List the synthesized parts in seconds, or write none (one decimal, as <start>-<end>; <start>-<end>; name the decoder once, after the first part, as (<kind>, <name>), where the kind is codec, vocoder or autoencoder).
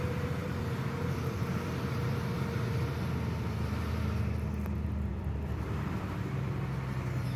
0.4-3.9 (vocoder, BigVGAN v2); 5.1-6.4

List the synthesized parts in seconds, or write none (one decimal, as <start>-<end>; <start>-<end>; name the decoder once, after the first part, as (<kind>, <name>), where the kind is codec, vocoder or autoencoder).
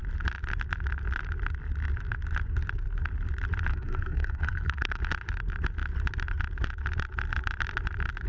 3.7-5.0 (codec, SNAC)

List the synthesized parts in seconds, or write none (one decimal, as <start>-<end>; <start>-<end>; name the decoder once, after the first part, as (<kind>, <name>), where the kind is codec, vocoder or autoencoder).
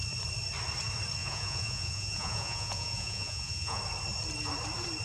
1.2-3.8 (vocoder, Vocos)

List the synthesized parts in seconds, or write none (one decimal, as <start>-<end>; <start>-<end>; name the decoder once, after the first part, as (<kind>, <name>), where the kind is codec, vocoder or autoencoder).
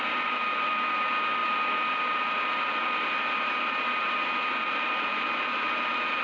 none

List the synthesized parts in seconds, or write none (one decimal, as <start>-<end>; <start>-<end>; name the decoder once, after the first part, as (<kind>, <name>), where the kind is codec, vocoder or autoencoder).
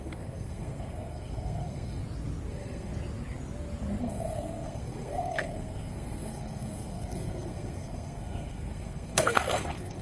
0.0-2.0 (codec, SNAC); 2.5-2.9; 4.0-10.0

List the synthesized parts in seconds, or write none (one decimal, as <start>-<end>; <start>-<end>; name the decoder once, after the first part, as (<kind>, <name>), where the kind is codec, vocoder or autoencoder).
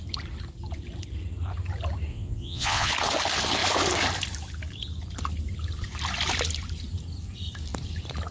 2.1-2.9 (vocoder, Vocos)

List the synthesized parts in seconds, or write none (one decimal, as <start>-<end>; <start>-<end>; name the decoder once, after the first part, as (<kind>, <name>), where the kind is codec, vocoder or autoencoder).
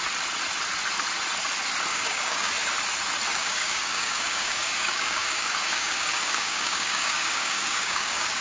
1.9-2.5 (codec, DAC); 3.3-8.4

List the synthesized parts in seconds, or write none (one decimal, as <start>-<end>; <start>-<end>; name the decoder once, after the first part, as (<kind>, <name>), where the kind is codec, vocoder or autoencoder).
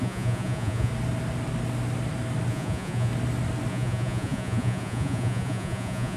0.0-0.9 (vocoder, Vocos); 2.5-3.1; 3.7-6.2